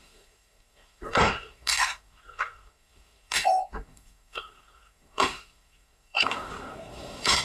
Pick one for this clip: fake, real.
fake